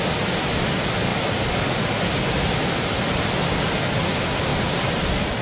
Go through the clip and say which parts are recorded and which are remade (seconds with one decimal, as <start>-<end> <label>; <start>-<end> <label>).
0.0-5.4 recorded